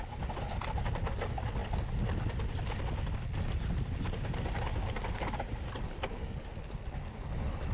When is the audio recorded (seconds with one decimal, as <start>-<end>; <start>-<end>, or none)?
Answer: 0.0-7.7